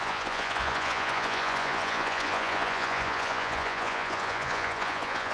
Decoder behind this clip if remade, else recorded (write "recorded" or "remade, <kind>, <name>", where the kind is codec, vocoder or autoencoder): remade, vocoder, Vocos